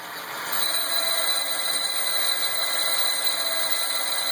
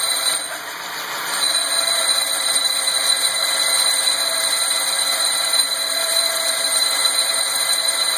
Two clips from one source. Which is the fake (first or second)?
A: second